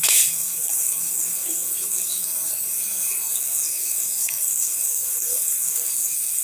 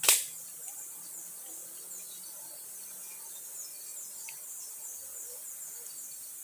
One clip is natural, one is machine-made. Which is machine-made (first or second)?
first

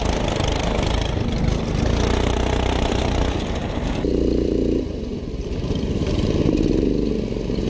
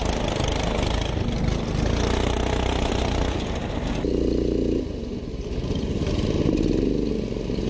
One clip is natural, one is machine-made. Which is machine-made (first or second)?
first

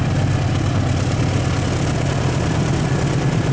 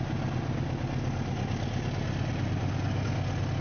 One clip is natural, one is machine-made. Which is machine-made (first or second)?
first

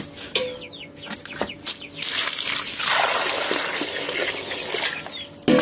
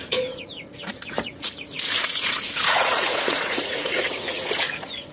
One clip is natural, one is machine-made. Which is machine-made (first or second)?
second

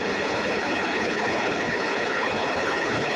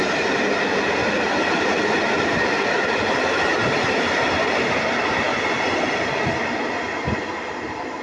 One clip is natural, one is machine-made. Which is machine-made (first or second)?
first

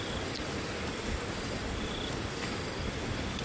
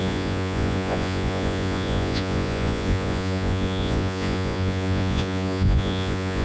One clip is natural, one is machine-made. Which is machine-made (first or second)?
second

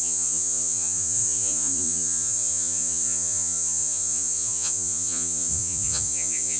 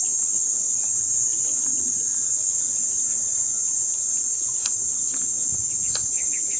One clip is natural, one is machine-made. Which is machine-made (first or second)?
first